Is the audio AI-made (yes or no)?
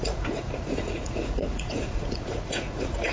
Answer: yes